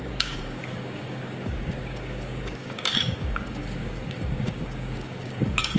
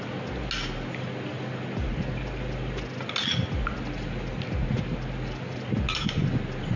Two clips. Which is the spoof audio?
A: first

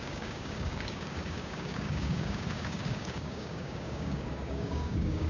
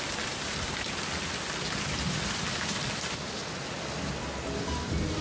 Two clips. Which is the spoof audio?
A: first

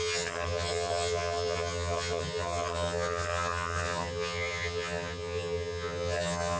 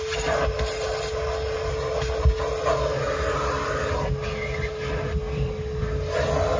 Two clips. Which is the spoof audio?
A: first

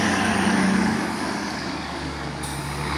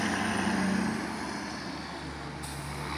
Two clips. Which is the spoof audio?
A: first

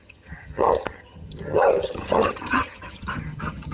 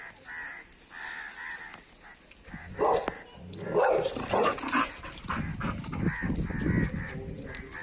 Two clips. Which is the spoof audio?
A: first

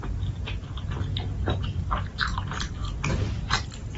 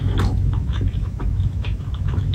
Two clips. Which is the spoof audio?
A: second